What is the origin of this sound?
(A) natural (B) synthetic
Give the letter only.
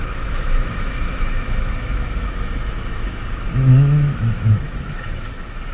B